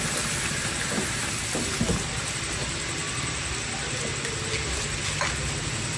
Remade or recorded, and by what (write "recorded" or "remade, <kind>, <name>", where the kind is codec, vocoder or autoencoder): recorded